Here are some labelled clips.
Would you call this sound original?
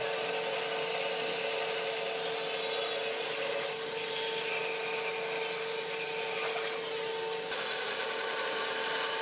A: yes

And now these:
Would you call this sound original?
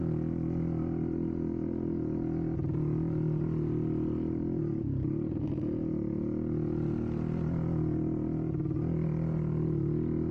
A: yes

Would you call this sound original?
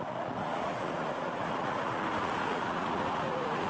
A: no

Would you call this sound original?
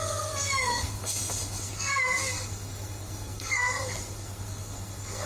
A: no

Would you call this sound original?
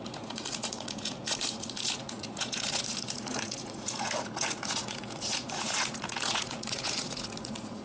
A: no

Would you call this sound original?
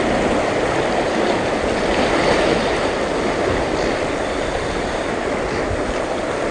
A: yes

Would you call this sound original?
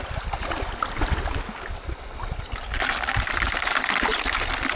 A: yes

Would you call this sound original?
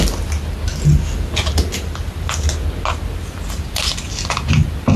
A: yes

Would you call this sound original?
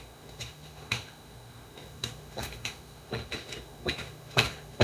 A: no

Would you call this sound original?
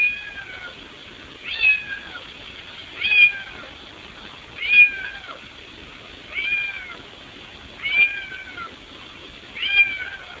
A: yes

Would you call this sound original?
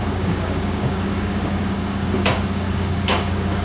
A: no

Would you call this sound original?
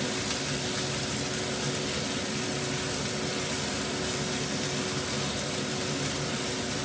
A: yes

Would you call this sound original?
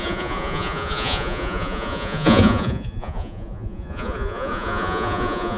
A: no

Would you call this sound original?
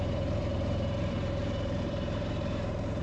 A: no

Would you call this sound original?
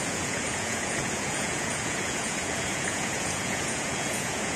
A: no